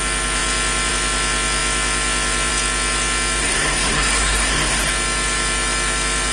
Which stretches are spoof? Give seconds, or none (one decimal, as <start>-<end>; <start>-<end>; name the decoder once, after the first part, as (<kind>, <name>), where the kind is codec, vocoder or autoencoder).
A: 3.4-4.9 (codec, SNAC)